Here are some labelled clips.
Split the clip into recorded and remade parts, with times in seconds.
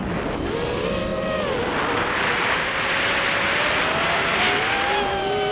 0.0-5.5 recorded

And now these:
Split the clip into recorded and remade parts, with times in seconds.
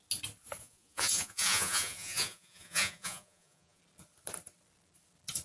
0.0-0.6 recorded; 0.6-3.8 remade; 3.8-5.4 recorded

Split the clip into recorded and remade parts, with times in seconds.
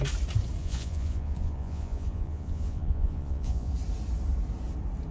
0.0-0.6 recorded; 0.6-3.7 remade; 3.7-5.1 recorded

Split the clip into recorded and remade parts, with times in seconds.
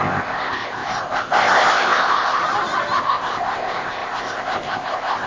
0.0-2.4 remade; 2.4-3.0 recorded; 3.0-5.3 remade